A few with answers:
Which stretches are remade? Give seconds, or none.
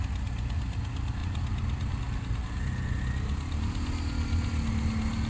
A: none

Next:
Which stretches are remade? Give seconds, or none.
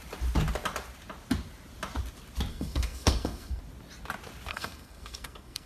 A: 2.5-3.6 (codec, SNAC); 4.5-5.7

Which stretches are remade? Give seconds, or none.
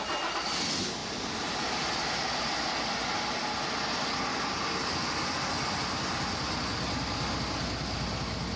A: none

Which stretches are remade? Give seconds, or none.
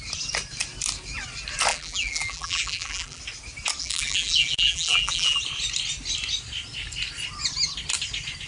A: 1.7-3.2 (vocoder, BigVGAN v2); 3.8-5.4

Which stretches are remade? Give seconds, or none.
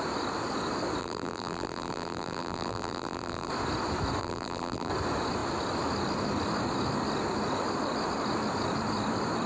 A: 1.0-3.5 (vocoder, BigVGAN v2); 4.2-4.9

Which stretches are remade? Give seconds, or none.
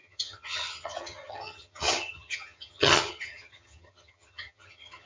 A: 0.0-5.1 (vocoder, HiFi-GAN)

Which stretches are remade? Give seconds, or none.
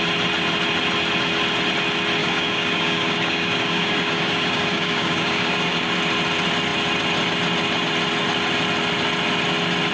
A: 2.2-5.9 (codec, DAC)